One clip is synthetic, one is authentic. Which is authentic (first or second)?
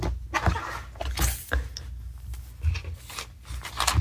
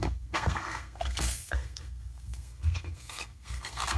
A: first